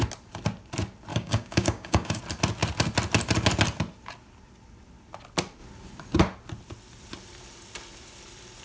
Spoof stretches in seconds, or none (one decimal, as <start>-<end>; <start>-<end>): 1.1-2.2